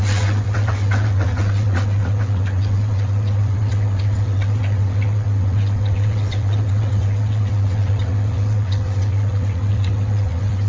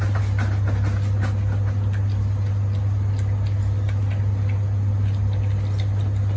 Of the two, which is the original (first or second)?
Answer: second